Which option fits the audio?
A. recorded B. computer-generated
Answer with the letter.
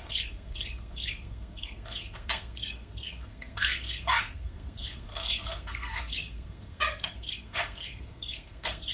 B